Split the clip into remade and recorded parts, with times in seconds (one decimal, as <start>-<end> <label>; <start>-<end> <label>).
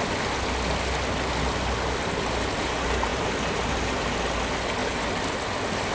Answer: 0.0-5.9 recorded